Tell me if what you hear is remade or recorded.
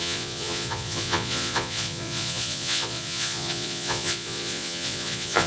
remade